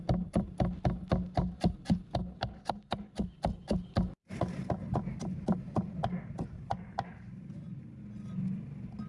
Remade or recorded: recorded